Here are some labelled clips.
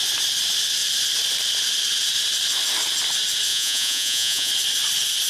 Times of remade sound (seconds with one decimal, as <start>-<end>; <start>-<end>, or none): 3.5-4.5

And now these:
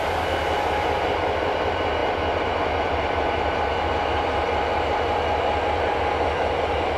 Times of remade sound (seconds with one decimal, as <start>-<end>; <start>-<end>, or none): none

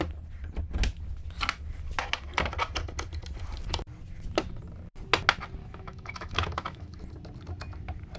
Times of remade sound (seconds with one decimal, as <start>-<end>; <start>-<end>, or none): 5.6-7.0